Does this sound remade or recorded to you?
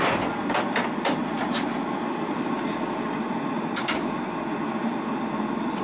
recorded